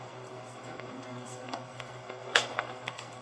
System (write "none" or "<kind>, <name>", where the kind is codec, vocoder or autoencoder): codec, SNAC